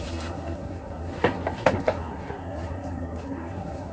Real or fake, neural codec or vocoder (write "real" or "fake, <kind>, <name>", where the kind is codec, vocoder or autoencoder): fake, codec, SNAC